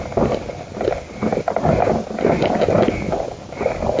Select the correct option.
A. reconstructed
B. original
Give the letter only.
B